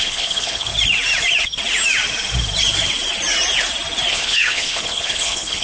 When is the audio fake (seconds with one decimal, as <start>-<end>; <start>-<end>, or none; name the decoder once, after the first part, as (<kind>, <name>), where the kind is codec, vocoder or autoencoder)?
0.0-0.7 (codec, HILCodec); 4.1-5.6